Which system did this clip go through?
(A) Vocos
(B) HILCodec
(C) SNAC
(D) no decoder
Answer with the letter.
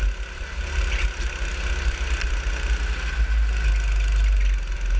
D